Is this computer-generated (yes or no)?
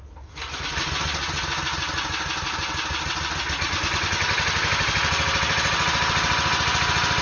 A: no